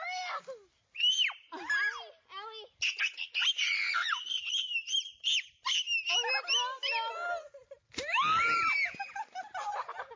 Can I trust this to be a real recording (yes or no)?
yes